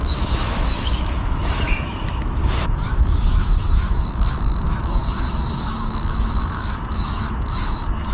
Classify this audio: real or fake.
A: fake